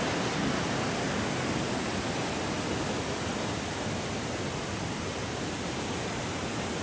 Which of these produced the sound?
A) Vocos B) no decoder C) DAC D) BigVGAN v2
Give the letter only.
B